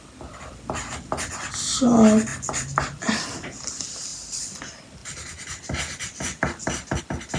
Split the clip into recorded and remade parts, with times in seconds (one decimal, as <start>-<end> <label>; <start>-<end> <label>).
0.0-2.3 recorded; 2.3-3.2 remade; 3.2-4.1 recorded; 4.1-4.6 remade; 4.6-5.0 recorded; 5.0-7.0 remade; 7.0-7.4 recorded